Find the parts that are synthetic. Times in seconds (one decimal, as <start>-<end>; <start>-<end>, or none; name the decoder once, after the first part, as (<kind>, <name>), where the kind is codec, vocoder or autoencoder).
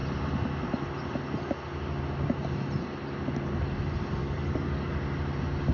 4.2-4.9 (codec, DAC)